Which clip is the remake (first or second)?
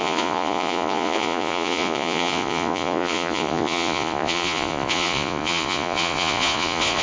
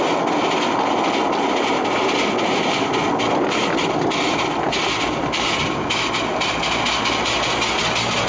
first